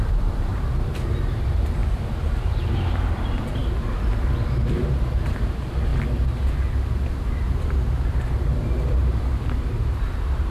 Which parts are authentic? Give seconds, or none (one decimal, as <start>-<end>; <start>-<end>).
1.8-2.3; 5.9-7.3